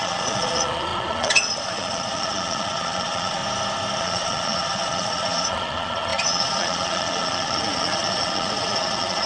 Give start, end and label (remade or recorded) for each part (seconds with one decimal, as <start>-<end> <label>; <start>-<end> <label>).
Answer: 0.0-3.4 remade; 3.4-4.0 recorded; 4.0-9.3 remade

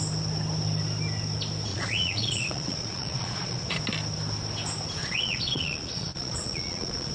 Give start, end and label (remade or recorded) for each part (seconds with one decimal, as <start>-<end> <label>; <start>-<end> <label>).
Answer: 0.0-1.7 recorded; 1.7-3.8 remade; 3.8-5.0 recorded; 5.0-7.1 remade